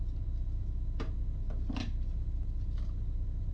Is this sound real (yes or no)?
yes